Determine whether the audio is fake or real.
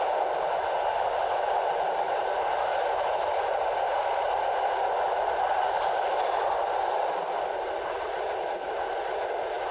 real